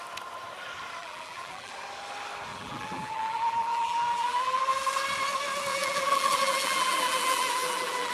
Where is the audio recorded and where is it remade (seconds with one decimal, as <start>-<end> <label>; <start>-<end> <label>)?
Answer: 0.0-1.0 recorded; 1.0-1.7 remade; 1.7-2.5 recorded; 2.5-4.6 remade; 4.6-5.7 recorded; 5.7-8.1 remade